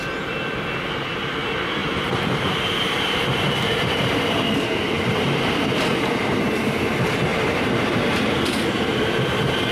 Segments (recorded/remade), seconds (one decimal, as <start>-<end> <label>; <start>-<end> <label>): 0.0-1.8 recorded; 1.8-6.4 remade; 6.4-7.3 recorded; 7.3-8.2 remade; 8.2-9.7 recorded